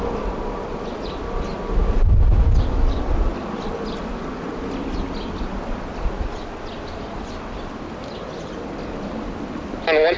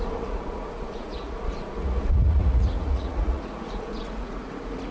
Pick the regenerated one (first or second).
second